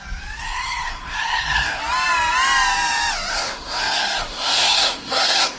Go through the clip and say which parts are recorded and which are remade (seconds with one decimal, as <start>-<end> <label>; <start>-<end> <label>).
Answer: 0.0-0.4 recorded; 0.4-1.8 remade; 1.8-3.3 recorded; 3.3-5.6 remade